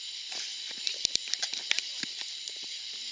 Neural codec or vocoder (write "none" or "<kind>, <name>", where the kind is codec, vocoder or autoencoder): none